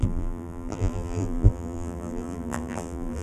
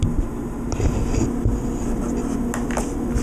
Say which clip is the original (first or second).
second